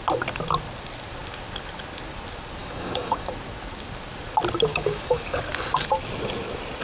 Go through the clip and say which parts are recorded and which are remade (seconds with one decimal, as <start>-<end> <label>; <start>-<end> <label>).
0.0-2.6 recorded; 2.6-3.3 remade; 3.3-4.7 recorded; 4.7-5.4 remade; 5.4-6.8 recorded